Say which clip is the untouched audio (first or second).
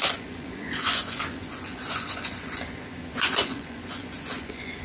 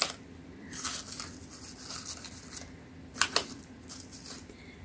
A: second